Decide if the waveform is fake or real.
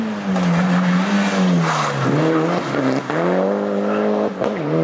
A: real